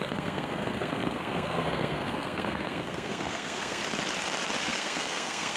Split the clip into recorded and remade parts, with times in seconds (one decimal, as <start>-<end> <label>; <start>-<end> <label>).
0.0-3.8 remade; 3.8-4.6 recorded; 4.6-5.6 remade